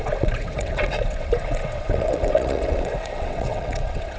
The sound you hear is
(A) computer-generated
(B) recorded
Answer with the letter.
A